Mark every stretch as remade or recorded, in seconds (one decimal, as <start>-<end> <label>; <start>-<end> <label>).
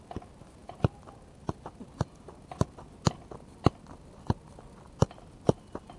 0.0-6.0 recorded